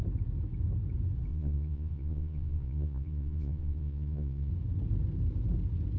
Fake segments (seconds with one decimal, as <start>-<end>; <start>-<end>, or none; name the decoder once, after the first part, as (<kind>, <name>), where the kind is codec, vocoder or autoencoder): 1.3-4.5 (vocoder, Vocos)